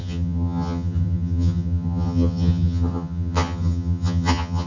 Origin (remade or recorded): remade